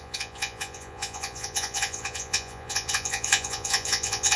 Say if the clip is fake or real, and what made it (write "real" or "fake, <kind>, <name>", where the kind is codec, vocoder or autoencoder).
fake, vocoder, Vocos